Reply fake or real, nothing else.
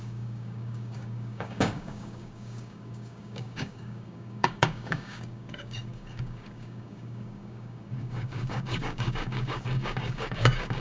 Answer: fake